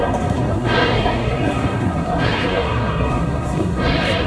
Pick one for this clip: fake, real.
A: fake